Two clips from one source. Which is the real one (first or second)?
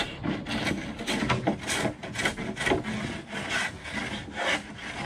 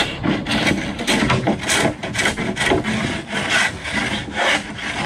first